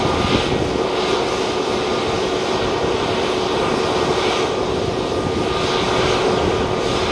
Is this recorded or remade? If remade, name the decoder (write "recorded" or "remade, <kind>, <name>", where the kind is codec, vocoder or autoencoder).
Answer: recorded